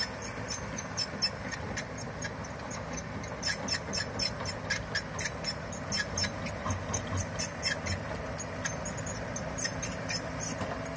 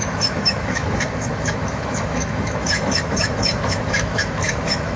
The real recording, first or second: first